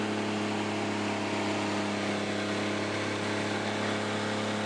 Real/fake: real